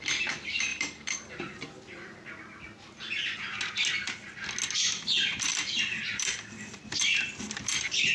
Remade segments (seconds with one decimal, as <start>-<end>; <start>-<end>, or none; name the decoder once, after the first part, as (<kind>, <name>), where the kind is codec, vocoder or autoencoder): 0.7-2.3 (vocoder, BigVGAN v2); 5.5-8.1